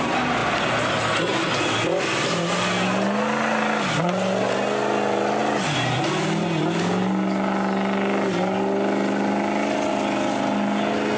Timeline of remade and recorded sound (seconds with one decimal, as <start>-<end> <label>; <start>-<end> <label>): 0.0-11.2 recorded